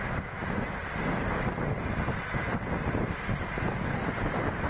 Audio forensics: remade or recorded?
recorded